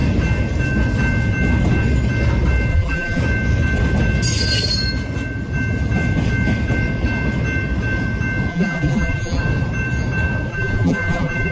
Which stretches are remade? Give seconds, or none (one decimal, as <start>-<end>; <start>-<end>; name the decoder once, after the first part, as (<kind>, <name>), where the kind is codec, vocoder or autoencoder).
2.7-3.2 (vocoder, BigVGAN v2); 8.5-9.4; 10.5-11.5